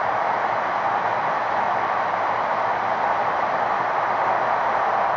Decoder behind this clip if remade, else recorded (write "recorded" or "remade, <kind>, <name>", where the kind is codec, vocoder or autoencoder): recorded